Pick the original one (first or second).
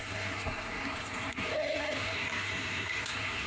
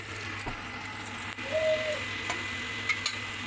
second